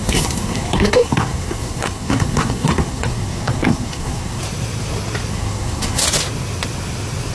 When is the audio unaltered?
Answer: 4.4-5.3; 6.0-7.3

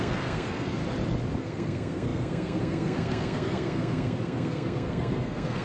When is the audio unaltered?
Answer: 0.8-1.4

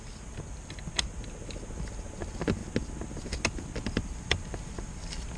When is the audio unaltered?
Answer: 0.0-5.4

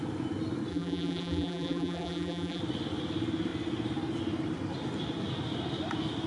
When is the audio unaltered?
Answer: 0.0-0.7; 2.6-6.3